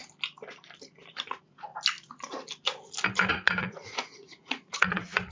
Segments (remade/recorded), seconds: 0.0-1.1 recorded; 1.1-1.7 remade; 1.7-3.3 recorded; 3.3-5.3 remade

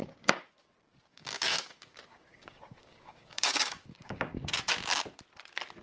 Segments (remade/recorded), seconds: 0.0-0.5 remade; 0.5-1.1 recorded; 1.1-4.6 remade; 4.6-5.8 recorded

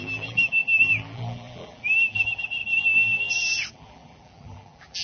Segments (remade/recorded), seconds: 0.0-2.6 remade; 2.6-3.7 recorded; 3.7-5.0 remade